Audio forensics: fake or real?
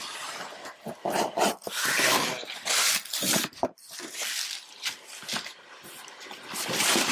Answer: real